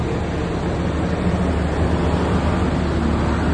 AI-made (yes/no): no